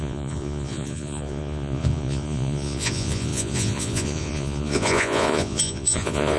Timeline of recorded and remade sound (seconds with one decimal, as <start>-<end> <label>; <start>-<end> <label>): 0.0-6.4 remade